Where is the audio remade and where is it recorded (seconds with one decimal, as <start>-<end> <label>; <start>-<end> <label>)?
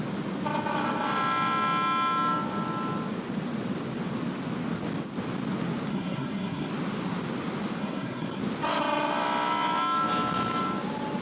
0.0-5.9 recorded; 5.9-6.7 remade; 6.7-7.8 recorded; 7.8-8.4 remade; 8.4-11.2 recorded